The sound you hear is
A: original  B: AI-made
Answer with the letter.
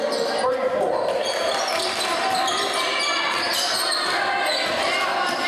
A